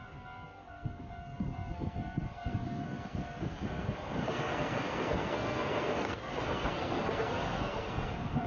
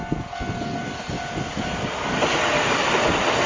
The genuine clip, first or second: second